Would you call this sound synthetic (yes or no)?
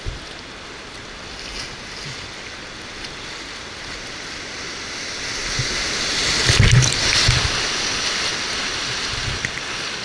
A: no